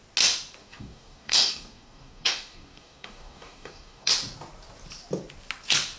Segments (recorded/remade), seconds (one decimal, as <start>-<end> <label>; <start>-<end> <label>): 0.0-0.6 recorded; 0.6-4.1 remade; 4.1-6.0 recorded